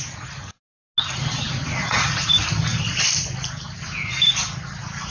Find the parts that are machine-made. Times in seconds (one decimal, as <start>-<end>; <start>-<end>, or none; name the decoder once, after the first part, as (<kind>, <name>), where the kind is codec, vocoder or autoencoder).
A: 1.8-2.3 (vocoder, Vocos)